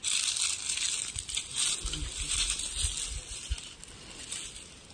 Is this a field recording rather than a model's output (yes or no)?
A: yes